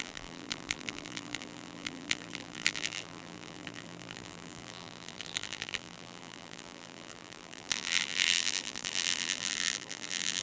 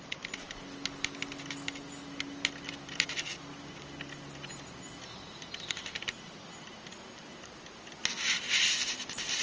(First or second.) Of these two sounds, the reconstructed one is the first